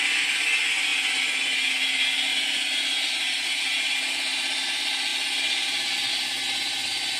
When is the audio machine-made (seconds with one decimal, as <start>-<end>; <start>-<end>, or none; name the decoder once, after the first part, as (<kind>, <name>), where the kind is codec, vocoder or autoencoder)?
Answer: none